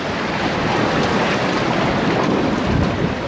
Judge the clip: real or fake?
real